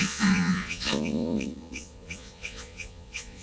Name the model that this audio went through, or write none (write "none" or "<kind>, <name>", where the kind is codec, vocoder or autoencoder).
vocoder, Vocos